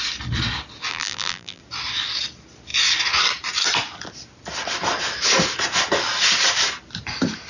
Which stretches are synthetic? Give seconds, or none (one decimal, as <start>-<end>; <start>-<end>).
0.9-1.6